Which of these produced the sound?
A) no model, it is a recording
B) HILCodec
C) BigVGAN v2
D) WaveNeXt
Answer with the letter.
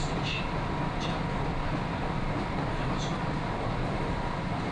A